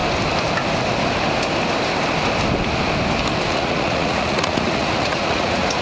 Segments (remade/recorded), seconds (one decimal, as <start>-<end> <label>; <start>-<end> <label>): 0.0-3.5 recorded; 3.5-5.8 remade